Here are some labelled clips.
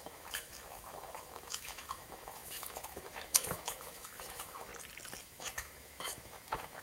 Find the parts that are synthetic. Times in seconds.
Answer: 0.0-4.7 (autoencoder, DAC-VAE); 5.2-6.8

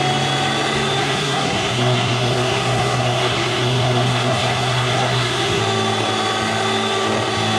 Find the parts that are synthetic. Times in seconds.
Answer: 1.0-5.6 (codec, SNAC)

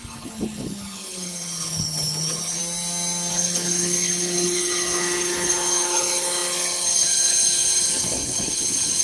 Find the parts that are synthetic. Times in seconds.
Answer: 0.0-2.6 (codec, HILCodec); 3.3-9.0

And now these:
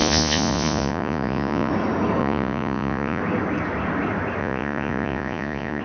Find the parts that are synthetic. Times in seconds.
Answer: 0.0-1.7 (vocoder, Vocos); 2.2-3.2; 4.4-5.8

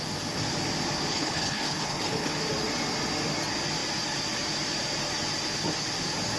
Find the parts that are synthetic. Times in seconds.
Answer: 1.1-2.4 (codec, HILCodec)

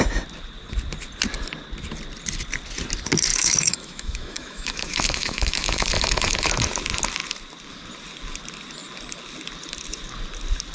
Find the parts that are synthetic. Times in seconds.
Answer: 3.3-6.5 (autoencoder, DAC-VAE)

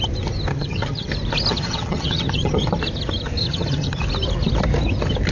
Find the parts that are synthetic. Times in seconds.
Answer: 0.5-1.1 (vocoder, HiFi-GAN); 1.5-2.7; 3.4-4.0